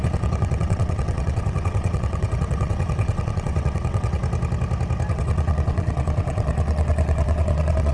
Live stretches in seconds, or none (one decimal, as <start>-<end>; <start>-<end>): 4.2-5.1